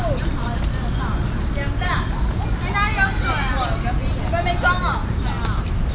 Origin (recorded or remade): recorded